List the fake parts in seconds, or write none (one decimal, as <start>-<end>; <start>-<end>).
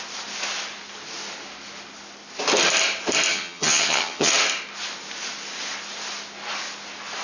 3.3-4.3